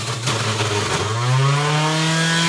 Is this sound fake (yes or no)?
no